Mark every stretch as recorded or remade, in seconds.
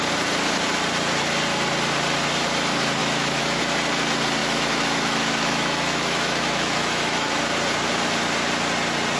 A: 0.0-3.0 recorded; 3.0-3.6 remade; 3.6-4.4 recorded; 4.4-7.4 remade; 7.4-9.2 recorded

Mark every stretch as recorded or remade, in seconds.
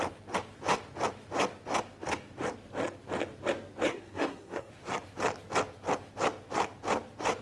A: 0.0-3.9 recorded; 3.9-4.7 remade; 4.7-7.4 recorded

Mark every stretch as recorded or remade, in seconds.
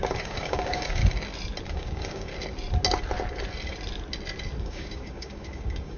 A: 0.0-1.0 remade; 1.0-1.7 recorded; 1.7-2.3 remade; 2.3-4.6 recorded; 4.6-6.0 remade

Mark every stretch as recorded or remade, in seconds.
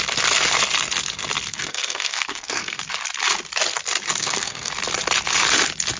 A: 0.0-1.5 recorded; 1.5-2.8 remade; 2.8-4.2 recorded; 4.2-4.7 remade; 4.7-6.0 recorded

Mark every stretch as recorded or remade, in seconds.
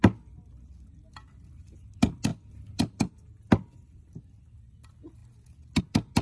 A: 0.0-6.2 recorded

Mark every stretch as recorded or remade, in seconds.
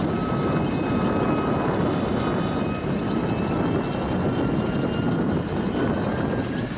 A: 0.0-6.8 recorded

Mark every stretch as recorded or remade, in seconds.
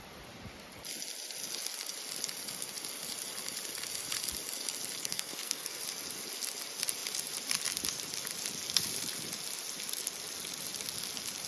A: 0.0-5.0 recorded; 5.0-5.8 remade; 5.8-11.5 recorded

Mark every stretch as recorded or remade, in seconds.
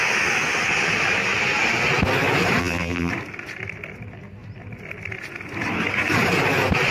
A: 0.0-2.6 recorded; 2.6-3.1 remade; 3.1-6.9 recorded